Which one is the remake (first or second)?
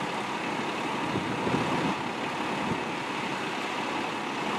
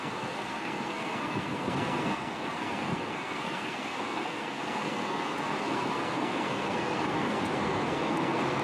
second